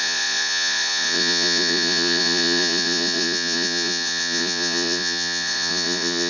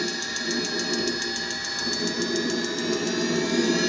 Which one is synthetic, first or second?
first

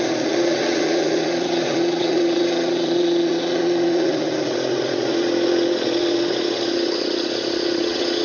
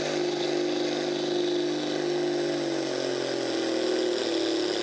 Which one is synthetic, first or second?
first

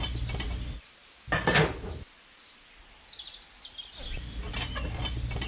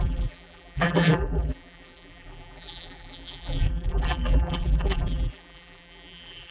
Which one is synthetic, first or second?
second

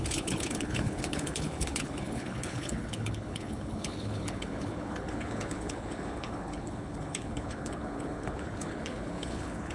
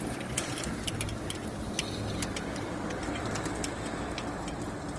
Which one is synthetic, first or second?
first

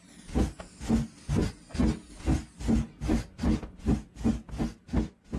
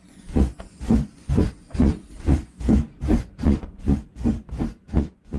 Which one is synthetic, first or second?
second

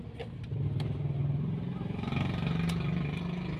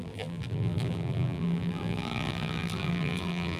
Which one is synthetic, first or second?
second